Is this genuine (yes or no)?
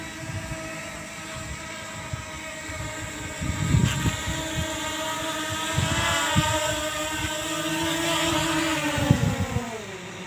yes